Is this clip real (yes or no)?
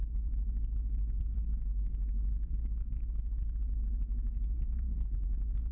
no